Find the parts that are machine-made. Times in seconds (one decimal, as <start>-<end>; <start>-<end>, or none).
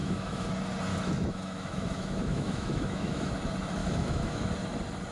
0.0-0.5; 0.9-3.3; 3.8-4.5